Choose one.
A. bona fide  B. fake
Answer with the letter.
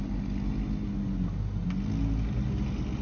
A